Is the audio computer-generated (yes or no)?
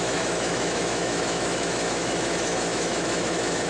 yes